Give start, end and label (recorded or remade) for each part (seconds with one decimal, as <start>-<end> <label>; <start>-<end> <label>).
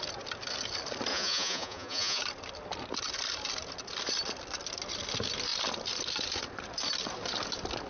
0.0-1.1 recorded; 1.1-2.2 remade; 2.2-7.9 recorded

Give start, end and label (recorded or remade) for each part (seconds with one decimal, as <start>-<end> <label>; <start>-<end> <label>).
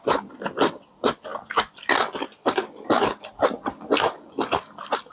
0.0-5.1 recorded